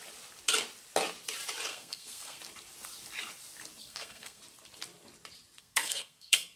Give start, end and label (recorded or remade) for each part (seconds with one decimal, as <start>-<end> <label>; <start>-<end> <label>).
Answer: 0.0-1.7 recorded; 1.7-2.4 remade; 2.4-3.8 recorded; 3.8-4.4 remade; 4.4-5.6 recorded; 5.6-6.6 remade